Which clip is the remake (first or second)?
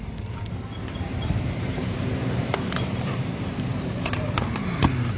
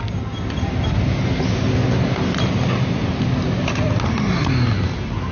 first